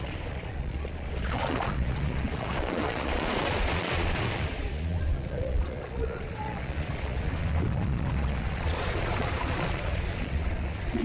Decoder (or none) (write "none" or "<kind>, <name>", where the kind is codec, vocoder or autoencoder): vocoder, Vocos